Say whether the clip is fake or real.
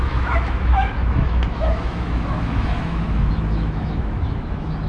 fake